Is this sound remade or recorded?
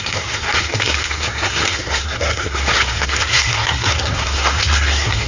remade